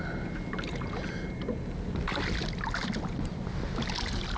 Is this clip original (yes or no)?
yes